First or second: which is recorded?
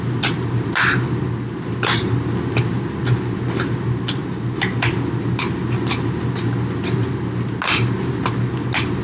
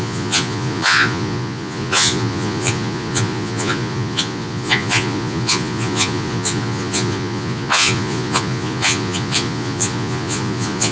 first